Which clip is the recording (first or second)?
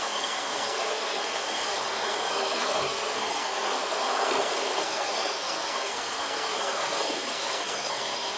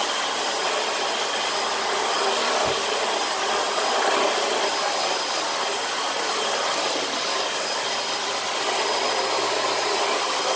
second